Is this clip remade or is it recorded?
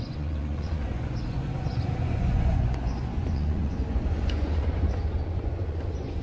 remade